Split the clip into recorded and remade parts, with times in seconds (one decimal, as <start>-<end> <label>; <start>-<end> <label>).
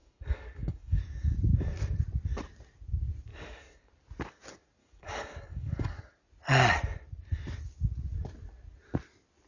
0.0-1.0 remade; 1.0-3.3 recorded; 3.3-3.9 remade; 3.9-4.8 recorded; 4.8-6.0 remade; 6.0-9.5 recorded